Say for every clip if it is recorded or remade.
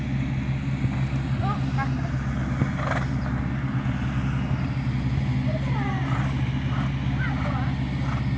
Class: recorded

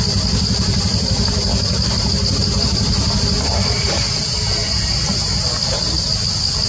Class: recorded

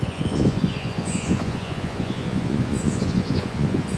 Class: remade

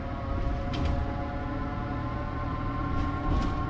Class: recorded